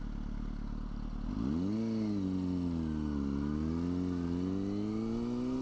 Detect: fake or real real